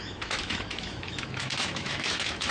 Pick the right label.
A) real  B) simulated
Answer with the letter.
B